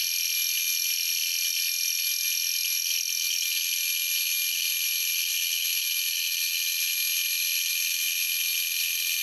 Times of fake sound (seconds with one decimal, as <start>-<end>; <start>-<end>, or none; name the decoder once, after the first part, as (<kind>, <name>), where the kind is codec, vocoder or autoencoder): none